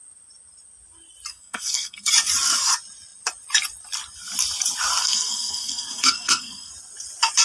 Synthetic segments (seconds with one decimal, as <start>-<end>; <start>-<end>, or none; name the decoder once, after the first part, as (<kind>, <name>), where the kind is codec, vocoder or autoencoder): 1.3-2.1 (codec, SNAC); 5.0-6.7